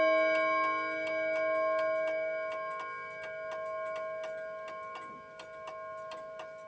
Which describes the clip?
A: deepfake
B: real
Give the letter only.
B